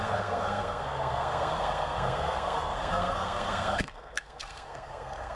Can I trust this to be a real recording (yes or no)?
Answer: no